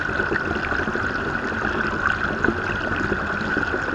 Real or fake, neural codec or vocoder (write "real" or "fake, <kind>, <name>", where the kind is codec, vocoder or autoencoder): real